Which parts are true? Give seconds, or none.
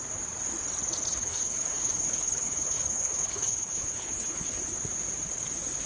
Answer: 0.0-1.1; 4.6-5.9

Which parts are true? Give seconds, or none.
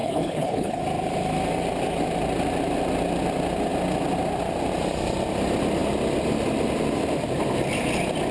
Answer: 0.8-8.3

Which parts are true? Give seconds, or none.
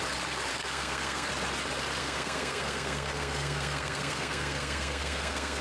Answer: 0.0-0.5; 1.3-2.0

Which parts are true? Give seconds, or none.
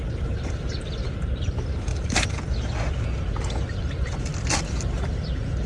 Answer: 1.9-3.8; 4.3-5.7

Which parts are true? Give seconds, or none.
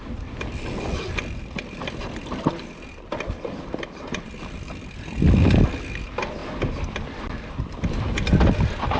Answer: 0.0-9.0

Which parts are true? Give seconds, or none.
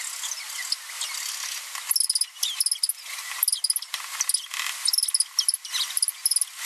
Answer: 0.0-6.7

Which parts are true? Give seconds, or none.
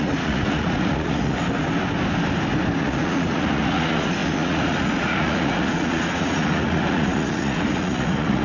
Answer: 1.4-2.8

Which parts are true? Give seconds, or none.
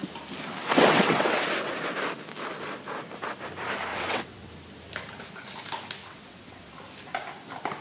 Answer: 0.0-0.6; 1.4-3.9; 4.5-6.0; 6.6-7.8